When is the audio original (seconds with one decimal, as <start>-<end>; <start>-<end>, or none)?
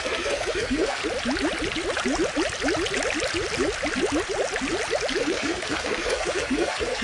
1.0-5.2